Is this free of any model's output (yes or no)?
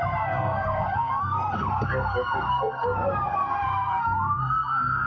no